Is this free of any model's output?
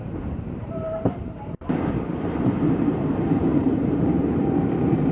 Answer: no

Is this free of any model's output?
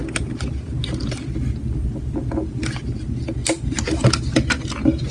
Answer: yes